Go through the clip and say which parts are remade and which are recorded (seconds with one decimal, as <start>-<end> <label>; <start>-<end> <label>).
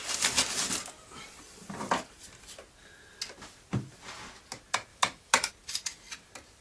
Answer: 0.0-4.9 recorded; 4.9-5.5 remade; 5.5-6.6 recorded